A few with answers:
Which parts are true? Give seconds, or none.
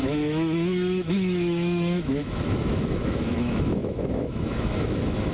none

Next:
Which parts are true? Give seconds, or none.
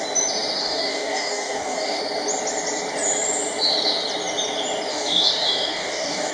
0.0-0.6; 2.0-4.9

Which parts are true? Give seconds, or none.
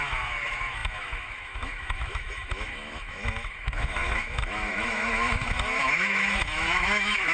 none